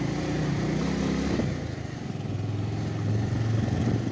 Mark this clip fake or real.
real